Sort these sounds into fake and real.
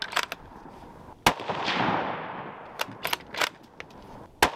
real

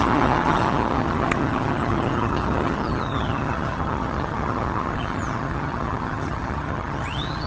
fake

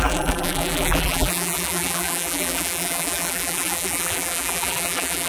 fake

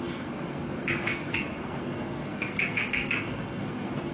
fake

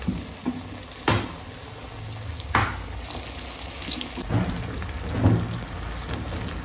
real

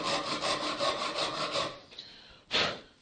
real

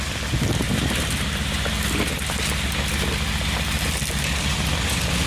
real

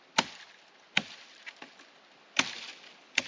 real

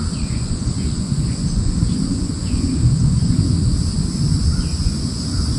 fake